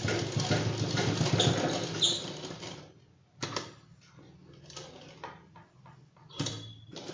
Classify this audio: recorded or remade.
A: recorded